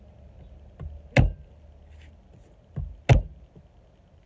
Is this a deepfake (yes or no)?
no